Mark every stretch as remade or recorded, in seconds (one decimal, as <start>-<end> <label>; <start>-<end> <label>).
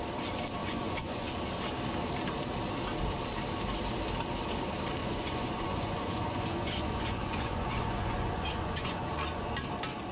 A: 0.0-0.6 recorded; 0.6-1.3 remade; 1.3-5.0 recorded; 5.0-9.5 remade; 9.5-10.1 recorded